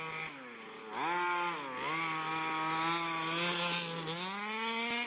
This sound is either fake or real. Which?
real